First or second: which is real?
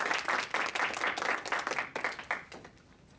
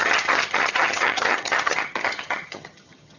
first